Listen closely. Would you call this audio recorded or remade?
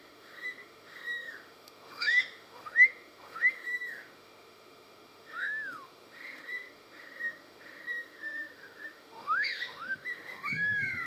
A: remade